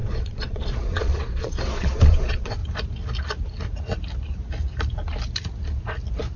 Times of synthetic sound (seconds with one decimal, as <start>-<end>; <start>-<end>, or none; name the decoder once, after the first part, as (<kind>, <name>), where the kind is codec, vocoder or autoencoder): 0.0-2.6 (vocoder, Vocos)